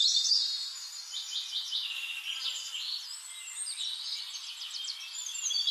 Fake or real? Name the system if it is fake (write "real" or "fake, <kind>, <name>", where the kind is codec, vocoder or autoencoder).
real